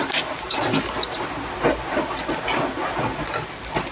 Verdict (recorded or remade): recorded